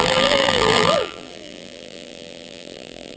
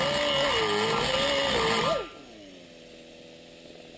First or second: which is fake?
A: first